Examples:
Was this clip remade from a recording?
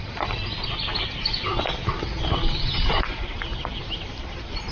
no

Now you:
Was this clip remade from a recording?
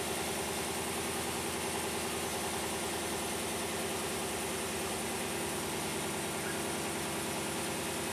no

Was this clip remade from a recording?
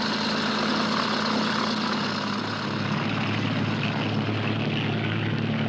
no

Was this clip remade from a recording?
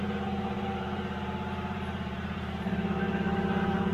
yes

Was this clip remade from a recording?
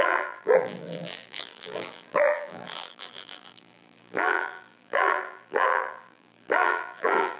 yes